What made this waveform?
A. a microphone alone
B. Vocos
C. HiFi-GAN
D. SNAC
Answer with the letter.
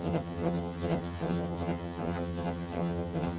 C